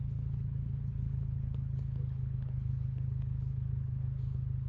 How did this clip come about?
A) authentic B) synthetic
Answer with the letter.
B